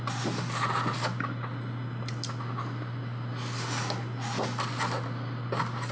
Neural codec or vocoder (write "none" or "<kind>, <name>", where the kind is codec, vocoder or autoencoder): none